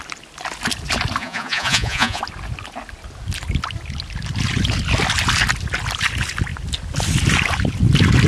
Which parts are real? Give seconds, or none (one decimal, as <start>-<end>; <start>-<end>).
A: 0.0-1.2; 2.2-8.3